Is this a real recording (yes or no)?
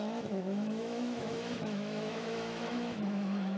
no